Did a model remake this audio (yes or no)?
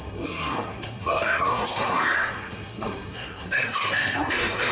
yes